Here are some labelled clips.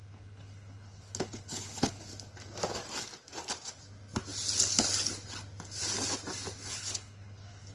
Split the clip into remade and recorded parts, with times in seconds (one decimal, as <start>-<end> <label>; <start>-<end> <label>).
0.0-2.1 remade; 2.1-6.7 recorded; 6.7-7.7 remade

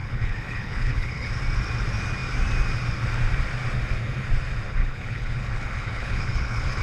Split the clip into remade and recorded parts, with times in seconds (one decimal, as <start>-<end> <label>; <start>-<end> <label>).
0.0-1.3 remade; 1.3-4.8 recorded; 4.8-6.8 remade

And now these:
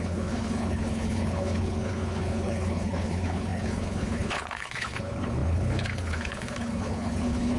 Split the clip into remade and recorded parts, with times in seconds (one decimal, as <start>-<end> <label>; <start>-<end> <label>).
0.0-7.6 remade

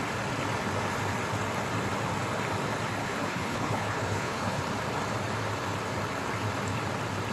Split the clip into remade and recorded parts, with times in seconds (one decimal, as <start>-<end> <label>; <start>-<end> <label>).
0.0-3.0 recorded; 3.0-4.6 remade; 4.6-7.3 recorded